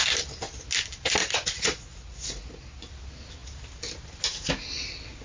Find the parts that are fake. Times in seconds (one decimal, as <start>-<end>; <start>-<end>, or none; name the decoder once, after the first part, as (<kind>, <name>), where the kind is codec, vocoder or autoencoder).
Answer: 1.2-2.9 (vocoder, Vocos)